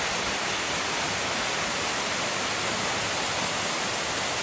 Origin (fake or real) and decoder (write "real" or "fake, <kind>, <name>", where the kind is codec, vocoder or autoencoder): real